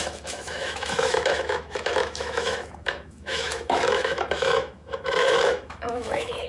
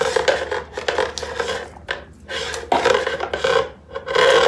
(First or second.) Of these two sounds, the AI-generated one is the first